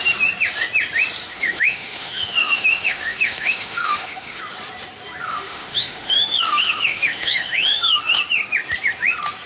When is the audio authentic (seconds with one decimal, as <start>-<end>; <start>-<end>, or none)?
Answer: 0.0-1.3; 4.4-5.3; 8.2-9.5